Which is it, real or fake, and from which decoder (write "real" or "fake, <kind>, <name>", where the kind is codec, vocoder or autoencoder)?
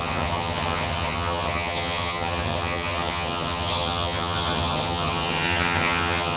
fake, vocoder, HiFi-GAN